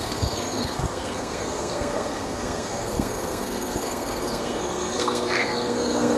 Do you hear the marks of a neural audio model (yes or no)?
yes